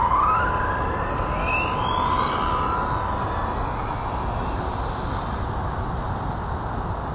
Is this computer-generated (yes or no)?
no